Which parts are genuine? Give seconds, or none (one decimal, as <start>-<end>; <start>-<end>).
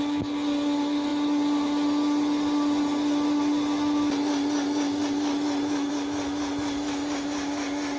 0.0-8.0